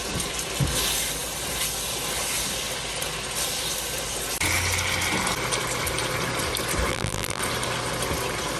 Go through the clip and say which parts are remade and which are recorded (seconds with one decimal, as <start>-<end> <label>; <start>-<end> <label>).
0.0-6.9 recorded; 6.9-7.4 remade; 7.4-8.6 recorded